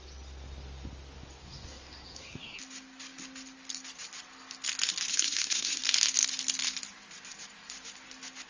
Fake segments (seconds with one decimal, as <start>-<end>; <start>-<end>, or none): 1.4-2.6; 5.1-5.8